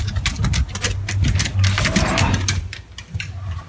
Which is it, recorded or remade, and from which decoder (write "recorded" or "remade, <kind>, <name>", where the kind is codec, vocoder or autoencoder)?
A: recorded